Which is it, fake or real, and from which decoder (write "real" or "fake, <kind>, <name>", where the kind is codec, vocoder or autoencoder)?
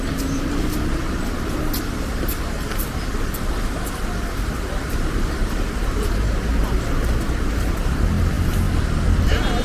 real